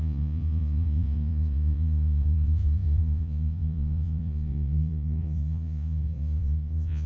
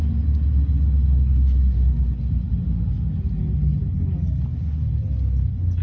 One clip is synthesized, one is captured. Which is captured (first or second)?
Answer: second